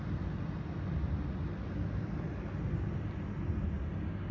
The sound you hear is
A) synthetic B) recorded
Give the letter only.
B